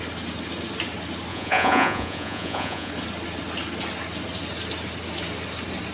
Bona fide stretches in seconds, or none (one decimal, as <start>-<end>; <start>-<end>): 0.0-1.3; 2.9-5.9